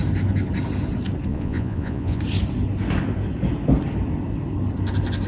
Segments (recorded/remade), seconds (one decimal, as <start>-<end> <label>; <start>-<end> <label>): 0.0-1.3 recorded; 1.3-2.2 remade; 2.2-5.3 recorded